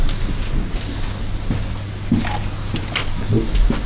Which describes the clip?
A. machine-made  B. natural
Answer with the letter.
B